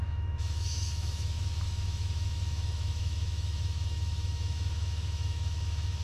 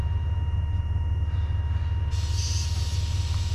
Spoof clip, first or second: first